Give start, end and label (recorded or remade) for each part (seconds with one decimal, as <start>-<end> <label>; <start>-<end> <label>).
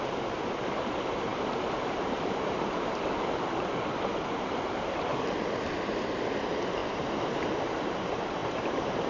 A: 0.0-5.1 remade; 5.1-5.9 recorded; 5.9-9.1 remade